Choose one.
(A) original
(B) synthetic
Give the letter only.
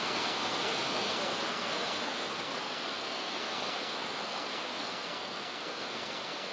B